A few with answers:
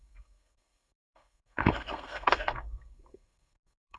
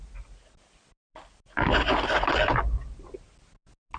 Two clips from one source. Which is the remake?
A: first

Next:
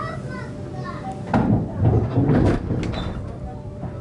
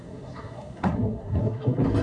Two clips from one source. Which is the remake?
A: second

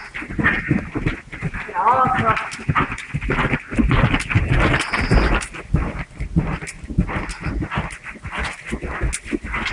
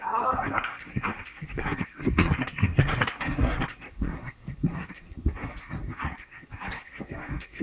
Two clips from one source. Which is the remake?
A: second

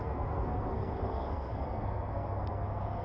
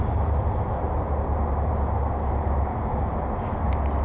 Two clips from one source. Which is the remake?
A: first